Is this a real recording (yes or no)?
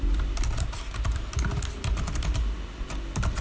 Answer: yes